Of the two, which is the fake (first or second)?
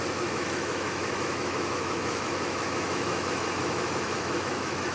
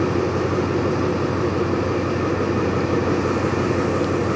first